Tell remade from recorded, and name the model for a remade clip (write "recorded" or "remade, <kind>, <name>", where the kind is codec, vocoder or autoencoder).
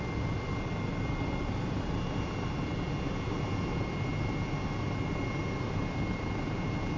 recorded